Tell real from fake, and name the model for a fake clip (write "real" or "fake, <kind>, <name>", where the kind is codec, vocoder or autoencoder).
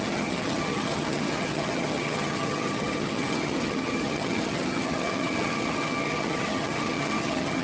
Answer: fake, vocoder, HiFi-GAN